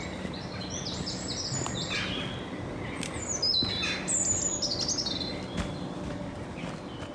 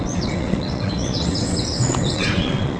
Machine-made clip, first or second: second